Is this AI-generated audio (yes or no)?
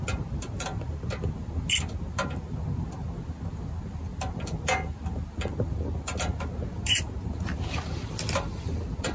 no